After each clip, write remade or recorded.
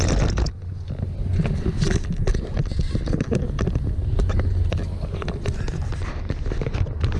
recorded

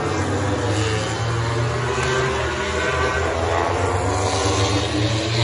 recorded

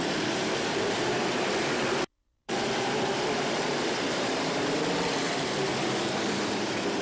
remade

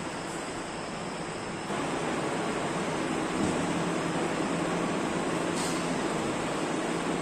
recorded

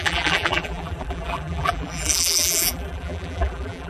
remade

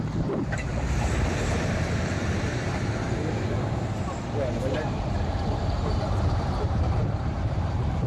remade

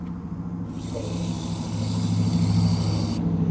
recorded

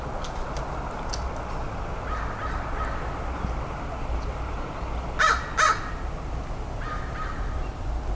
recorded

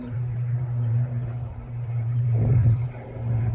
remade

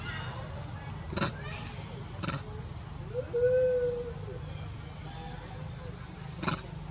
recorded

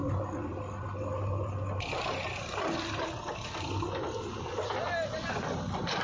recorded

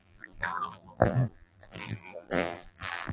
remade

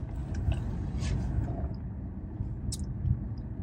recorded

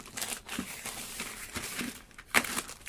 remade